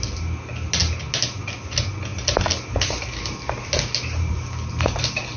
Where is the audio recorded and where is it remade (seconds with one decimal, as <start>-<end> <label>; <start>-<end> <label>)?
0.0-5.4 recorded